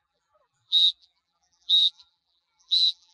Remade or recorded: remade